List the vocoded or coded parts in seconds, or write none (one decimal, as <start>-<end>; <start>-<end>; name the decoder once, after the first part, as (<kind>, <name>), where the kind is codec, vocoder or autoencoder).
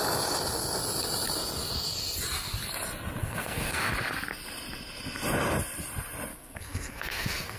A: 3.2-3.9 (codec, SNAC); 6.3-7.6